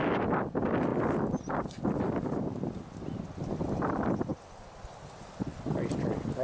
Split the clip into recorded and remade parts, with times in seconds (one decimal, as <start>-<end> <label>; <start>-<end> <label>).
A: 0.0-0.9 recorded; 0.9-3.2 remade; 3.2-4.3 recorded; 4.3-5.3 remade; 5.3-6.4 recorded